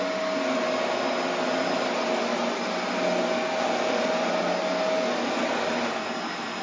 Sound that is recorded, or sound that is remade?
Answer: recorded